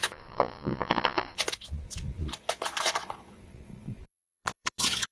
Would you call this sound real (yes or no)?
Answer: no